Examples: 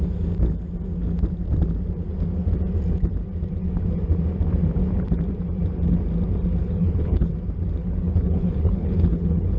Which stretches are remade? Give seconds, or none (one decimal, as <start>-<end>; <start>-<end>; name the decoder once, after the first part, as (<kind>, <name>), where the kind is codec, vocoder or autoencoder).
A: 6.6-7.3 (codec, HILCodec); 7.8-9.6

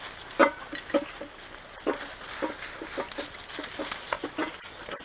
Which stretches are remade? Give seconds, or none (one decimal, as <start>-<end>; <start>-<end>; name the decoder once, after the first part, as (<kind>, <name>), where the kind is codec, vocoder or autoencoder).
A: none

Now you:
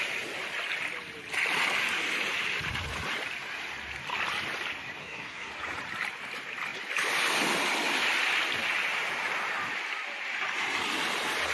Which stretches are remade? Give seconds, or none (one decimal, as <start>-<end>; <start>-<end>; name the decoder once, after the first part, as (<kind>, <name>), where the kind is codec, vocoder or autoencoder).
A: 5.0-5.5 (codec, SNAC)